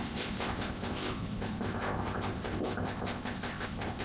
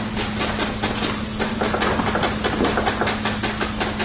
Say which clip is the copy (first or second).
first